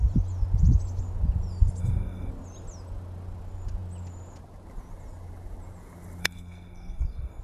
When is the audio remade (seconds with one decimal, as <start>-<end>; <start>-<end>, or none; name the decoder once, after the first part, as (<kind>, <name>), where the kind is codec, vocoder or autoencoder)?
1.8-2.3 (codec, SNAC); 6.2-7.4

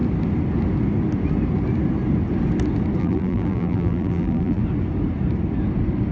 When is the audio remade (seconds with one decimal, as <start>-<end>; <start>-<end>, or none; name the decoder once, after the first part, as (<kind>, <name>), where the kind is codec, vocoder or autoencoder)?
3.0-4.6 (vocoder, BigVGAN v2)

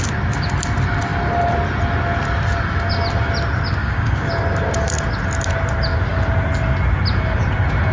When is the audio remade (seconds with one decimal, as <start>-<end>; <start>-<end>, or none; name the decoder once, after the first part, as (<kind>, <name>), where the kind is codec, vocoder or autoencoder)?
3.8-4.3 (codec, DAC)